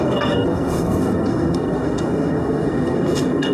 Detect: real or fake fake